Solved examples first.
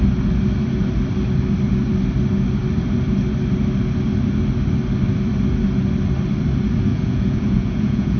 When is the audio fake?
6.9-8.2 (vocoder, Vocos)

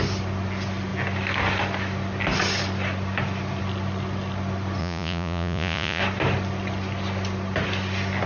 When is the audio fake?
4.8-6.0 (vocoder, Vocos)